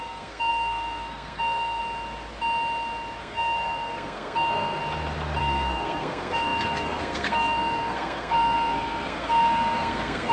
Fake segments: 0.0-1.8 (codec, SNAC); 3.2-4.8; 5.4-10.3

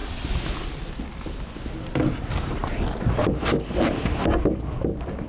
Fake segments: none

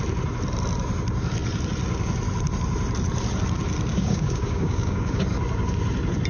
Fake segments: 3.9-5.2 (codec, DAC)

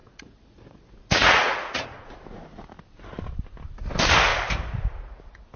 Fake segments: 0.0-2.6 (vocoder, Vocos)

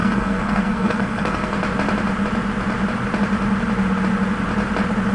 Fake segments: 0.0-1.6 (codec, SNAC)

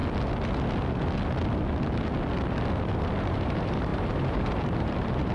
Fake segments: 3.2-5.3 (vocoder, BigVGAN v2)

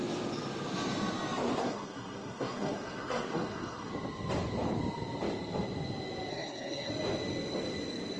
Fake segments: 1.6-3.9 (codec, SNAC); 6.3-6.9